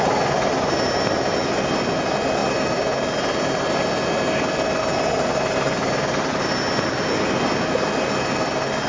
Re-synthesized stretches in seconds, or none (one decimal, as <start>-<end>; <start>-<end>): none